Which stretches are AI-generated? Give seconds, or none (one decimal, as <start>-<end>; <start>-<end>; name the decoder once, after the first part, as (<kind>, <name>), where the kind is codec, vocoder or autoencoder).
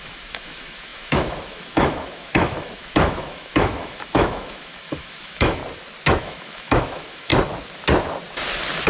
0.0-5.6 (autoencoder, DAC-VAE); 6.2-7.3